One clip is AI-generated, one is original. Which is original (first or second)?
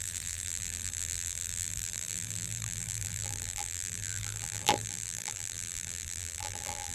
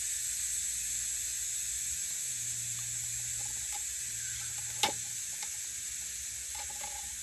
second